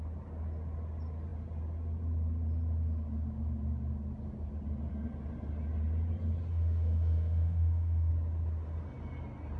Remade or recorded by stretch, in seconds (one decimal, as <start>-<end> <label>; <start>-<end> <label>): 0.0-6.5 recorded; 6.5-8.1 remade; 8.1-9.6 recorded